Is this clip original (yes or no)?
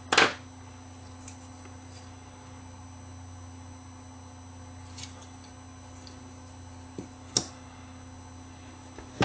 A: yes